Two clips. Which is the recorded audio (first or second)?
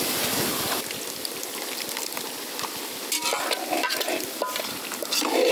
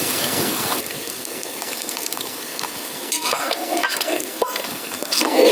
first